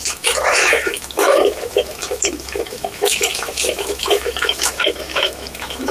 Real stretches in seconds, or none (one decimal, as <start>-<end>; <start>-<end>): none

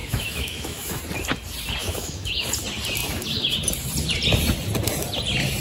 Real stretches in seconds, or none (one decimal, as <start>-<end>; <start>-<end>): 1.0-1.8; 2.3-5.6

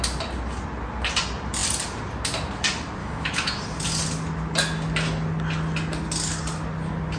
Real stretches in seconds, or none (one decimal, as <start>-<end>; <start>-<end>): 0.0-3.0; 3.6-7.2

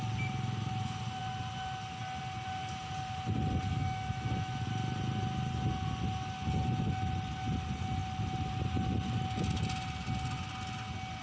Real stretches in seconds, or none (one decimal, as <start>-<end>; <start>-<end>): 0.0-3.7; 4.7-11.2

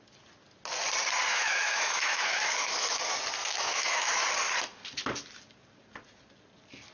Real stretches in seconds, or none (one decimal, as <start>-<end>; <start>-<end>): 0.0-1.3; 3.0-3.4; 4.1-6.9

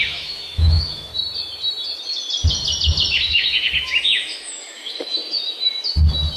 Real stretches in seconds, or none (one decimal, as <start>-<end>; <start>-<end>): 1.1-3.1; 5.2-6.4

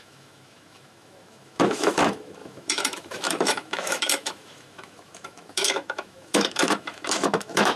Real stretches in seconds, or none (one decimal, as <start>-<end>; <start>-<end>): none